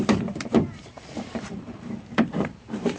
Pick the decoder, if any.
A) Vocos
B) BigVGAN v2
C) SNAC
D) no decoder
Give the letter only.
B